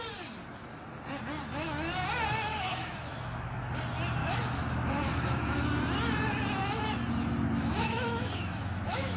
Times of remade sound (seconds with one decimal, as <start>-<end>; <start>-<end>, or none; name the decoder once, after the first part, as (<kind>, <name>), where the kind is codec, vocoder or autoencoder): 2.5-3.7 (autoencoder, DAC-VAE); 4.2-5.7; 7.8-9.2